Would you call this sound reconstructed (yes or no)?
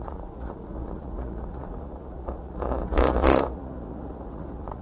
yes